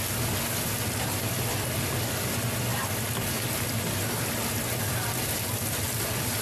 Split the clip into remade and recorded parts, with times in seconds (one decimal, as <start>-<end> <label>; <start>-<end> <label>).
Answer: 0.0-6.4 recorded